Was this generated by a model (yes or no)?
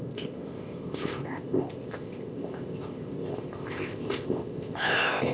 yes